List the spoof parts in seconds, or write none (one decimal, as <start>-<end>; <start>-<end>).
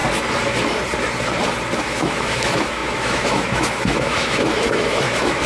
1.8-5.5